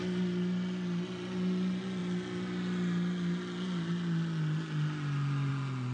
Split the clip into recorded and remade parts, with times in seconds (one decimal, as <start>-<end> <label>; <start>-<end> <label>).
0.0-5.9 recorded